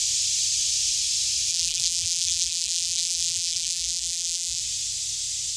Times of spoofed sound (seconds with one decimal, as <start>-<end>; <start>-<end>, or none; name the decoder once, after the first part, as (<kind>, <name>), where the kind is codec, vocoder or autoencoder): 1.5-4.6 (vocoder, BigVGAN v2)